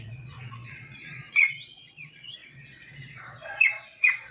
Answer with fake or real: fake